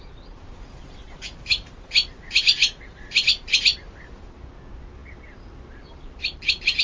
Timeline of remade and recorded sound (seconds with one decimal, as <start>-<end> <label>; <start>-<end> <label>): 0.0-6.8 recorded